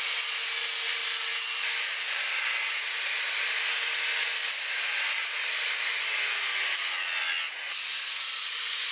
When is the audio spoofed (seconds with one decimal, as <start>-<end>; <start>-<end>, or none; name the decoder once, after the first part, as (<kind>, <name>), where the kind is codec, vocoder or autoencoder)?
none

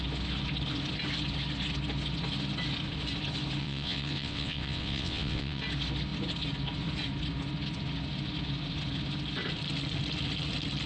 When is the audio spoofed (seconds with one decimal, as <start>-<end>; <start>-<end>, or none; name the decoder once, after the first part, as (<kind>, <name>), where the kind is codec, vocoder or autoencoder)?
3.6-5.6 (vocoder, WaveNeXt)

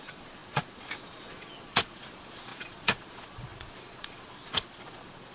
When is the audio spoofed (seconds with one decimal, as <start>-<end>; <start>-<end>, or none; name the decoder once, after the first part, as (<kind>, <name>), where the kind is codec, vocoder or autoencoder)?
0.0-5.3 (vocoder, Vocos)

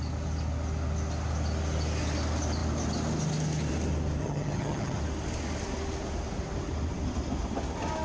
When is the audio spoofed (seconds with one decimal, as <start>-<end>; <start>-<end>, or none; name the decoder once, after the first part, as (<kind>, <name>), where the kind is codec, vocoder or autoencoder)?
4.2-5.0 (vocoder, HiFi-GAN)

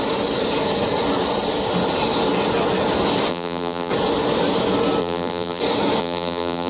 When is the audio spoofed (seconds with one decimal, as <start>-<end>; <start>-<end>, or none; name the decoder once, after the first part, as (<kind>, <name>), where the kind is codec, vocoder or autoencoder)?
3.3-3.9 (vocoder, BigVGAN v2); 5.0-5.6; 6.0-6.7

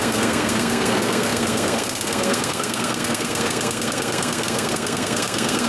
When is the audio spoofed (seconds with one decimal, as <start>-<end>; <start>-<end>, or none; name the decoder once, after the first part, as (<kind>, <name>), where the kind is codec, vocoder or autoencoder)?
0.0-5.7 (codec, SNAC)

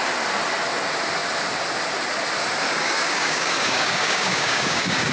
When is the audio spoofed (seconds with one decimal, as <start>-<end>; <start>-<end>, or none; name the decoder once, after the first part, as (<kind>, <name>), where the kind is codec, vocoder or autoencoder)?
2.7-5.1 (codec, DAC)

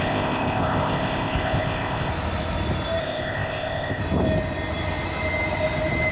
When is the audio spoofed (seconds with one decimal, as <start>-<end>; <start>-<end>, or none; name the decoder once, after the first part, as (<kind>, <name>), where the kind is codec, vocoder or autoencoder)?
0.0-2.1 (codec, ZipCodec); 3.0-4.0